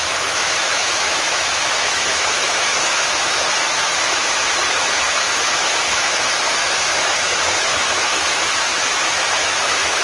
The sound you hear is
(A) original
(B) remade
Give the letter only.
B